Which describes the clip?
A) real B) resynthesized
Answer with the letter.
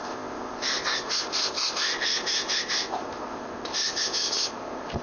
B